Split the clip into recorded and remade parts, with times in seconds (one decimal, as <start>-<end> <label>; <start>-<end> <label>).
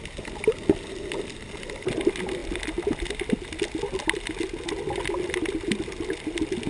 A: 0.0-6.7 recorded